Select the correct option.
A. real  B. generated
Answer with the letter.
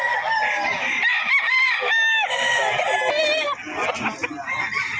A